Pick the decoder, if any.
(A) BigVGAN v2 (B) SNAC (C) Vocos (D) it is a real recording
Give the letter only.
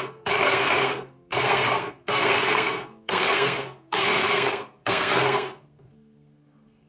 B